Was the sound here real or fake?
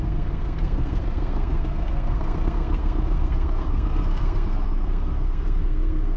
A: fake